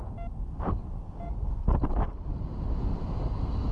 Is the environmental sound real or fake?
real